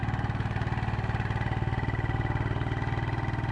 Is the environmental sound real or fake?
real